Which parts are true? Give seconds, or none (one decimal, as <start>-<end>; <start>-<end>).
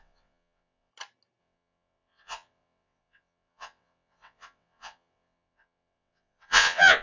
0.9-1.4